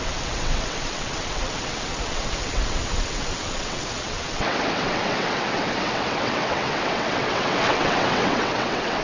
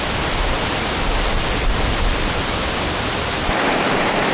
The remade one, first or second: first